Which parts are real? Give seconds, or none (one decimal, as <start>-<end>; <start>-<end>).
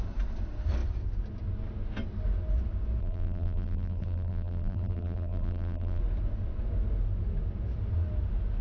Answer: 0.0-3.0; 6.0-8.6